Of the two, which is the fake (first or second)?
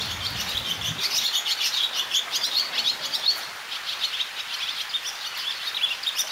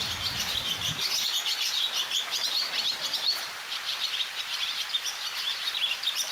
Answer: second